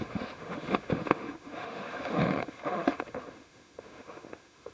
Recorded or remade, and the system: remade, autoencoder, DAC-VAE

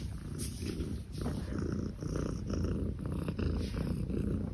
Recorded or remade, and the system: recorded